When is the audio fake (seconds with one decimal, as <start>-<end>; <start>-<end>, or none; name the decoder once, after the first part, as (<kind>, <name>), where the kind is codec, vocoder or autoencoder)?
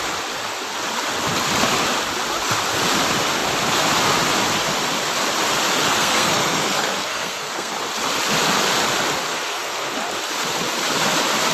5.9-7.7 (codec, SNAC); 9.3-9.9